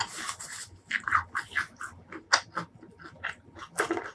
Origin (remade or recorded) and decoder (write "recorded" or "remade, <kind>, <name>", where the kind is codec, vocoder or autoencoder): recorded